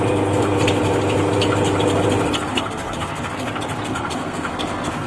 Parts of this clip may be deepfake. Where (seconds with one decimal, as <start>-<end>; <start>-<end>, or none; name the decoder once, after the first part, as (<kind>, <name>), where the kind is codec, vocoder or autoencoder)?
2.5-3.5 (codec, SNAC); 3.9-5.1